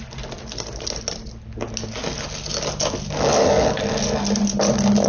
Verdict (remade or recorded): recorded